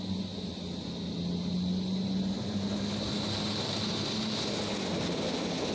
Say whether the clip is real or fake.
real